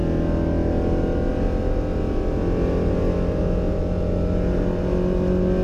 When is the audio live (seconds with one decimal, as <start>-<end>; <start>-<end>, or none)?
0.0-5.6